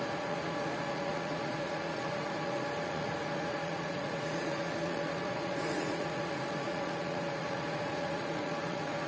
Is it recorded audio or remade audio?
remade